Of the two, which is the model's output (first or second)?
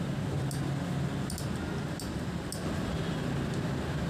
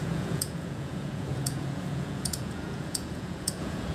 second